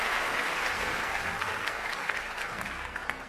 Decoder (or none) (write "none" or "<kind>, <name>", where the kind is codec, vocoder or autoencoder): codec, SNAC